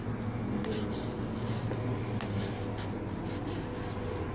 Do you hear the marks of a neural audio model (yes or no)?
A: no